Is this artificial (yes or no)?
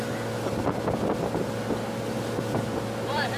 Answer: no